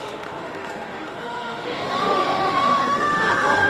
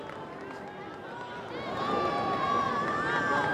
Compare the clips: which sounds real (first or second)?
second